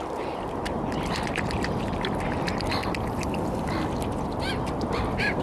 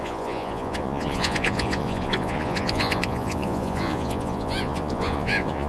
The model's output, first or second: second